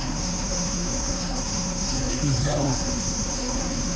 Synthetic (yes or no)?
yes